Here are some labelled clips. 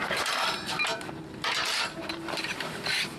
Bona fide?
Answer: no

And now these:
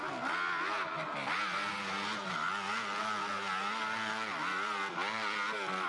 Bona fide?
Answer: yes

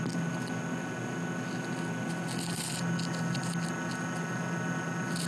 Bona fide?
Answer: yes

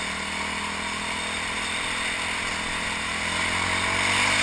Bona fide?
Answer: yes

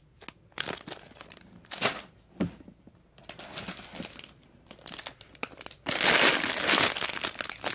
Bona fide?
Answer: yes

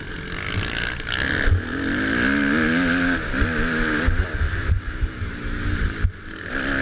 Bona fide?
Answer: yes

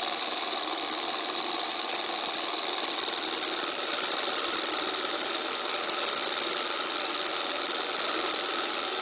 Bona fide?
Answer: yes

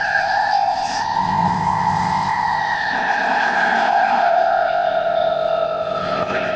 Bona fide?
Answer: no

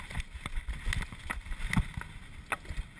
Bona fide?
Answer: yes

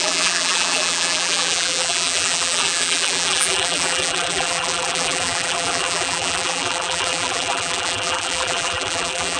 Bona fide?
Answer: no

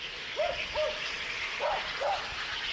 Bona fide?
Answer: yes